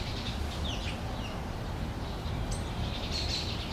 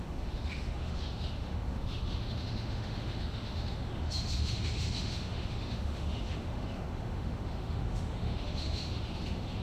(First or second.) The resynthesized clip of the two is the second